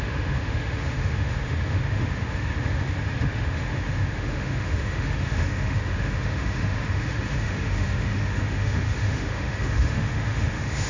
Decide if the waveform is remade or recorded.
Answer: remade